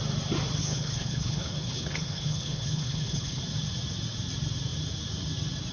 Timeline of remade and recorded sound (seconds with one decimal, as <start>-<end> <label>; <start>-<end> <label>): 0.0-0.6 recorded; 0.6-3.4 remade; 3.4-5.7 recorded